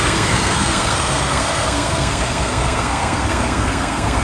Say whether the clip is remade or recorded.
remade